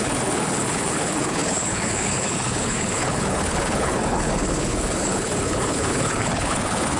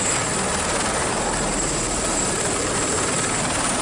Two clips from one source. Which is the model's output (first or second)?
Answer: first